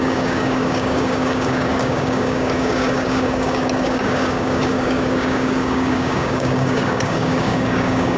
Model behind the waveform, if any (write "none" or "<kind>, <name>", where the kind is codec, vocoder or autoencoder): codec, DAC